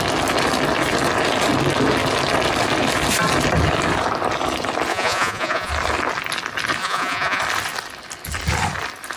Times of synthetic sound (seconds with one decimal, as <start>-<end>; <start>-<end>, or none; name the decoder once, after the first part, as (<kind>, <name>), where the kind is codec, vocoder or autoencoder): 4.9-5.7 (vocoder, Vocos); 6.8-7.4